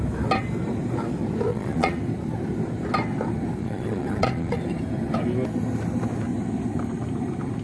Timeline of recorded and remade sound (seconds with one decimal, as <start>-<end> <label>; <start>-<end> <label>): 0.0-1.5 recorded; 1.5-2.0 remade; 2.0-3.6 recorded; 3.6-4.6 remade; 4.6-7.6 recorded